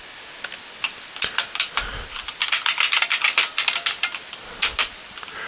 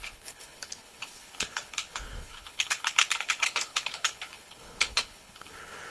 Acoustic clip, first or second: first